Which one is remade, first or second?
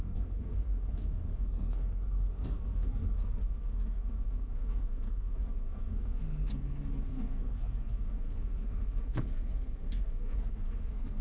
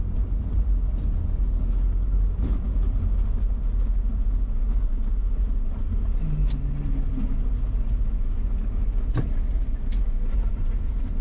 first